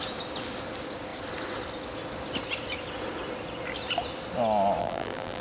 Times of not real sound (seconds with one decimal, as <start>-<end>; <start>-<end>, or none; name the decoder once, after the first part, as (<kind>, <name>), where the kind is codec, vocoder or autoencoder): 4.8-5.4 (vocoder, BigVGAN v2)